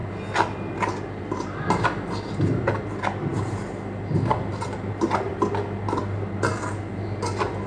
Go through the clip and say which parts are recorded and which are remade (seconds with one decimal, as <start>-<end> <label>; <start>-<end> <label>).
0.0-3.3 recorded; 3.3-5.3 remade; 5.3-7.7 recorded